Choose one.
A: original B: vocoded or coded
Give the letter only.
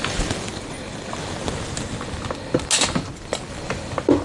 A